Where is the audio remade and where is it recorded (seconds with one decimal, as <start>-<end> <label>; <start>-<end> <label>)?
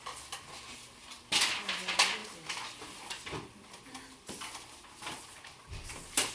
0.0-6.3 recorded